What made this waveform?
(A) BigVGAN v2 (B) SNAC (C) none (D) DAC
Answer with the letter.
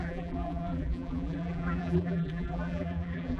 A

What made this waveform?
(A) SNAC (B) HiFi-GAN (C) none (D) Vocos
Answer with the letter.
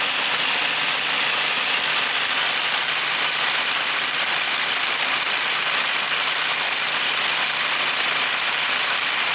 C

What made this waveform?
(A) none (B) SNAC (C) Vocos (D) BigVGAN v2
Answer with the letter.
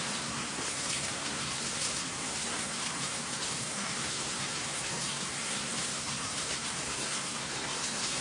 B